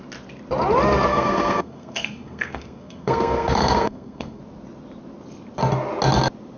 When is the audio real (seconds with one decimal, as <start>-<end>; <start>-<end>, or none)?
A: 0.0-1.1; 4.4-6.6

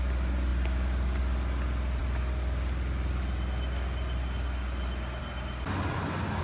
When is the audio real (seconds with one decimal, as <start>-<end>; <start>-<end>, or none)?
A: 0.0-6.4

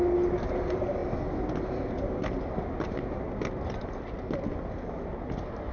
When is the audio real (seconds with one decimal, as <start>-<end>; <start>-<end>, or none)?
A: 0.0-5.7